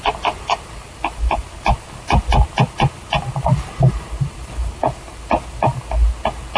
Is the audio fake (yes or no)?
no